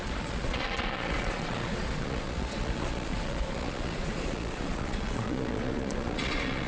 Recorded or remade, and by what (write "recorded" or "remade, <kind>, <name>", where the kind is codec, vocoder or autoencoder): remade, vocoder, Vocos